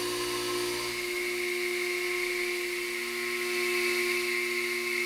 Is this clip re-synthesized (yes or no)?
no